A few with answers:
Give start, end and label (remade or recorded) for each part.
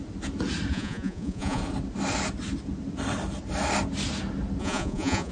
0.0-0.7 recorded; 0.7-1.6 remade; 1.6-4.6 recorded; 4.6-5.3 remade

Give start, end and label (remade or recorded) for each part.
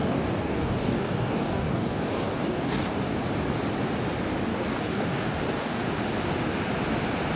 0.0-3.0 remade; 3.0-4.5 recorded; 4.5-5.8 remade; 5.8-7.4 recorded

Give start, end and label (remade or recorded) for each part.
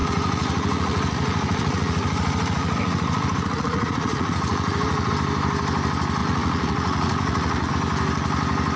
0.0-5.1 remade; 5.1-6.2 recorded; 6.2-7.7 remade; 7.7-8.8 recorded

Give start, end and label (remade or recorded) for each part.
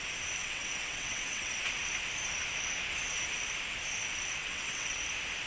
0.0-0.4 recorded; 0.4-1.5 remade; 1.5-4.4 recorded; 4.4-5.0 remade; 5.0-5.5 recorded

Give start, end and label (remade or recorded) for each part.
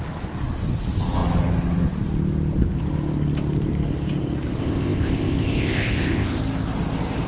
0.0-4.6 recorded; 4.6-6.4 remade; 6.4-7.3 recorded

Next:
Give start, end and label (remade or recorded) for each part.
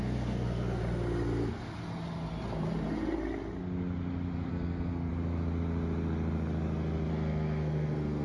0.0-0.8 remade; 0.8-4.5 recorded; 4.5-5.1 remade; 5.1-7.1 recorded; 7.1-8.2 remade